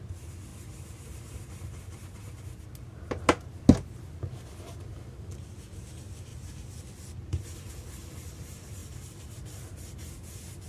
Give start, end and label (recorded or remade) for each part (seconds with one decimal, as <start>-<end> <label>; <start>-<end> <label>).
0.0-0.5 recorded; 0.5-1.8 remade; 1.8-6.3 recorded; 6.3-7.7 remade; 7.7-8.8 recorded; 8.8-10.2 remade; 10.2-10.7 recorded